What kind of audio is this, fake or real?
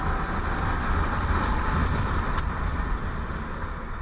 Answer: real